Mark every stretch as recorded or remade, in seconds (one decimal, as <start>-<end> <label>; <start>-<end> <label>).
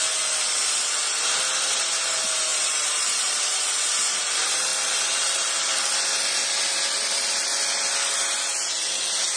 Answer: 0.0-2.5 recorded; 2.5-4.2 remade; 4.2-9.4 recorded